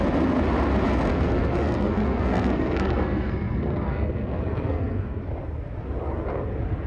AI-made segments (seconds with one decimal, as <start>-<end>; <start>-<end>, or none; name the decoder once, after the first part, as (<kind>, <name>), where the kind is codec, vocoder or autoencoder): 1.1-5.2 (codec, SNAC)